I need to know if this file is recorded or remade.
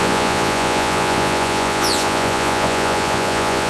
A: remade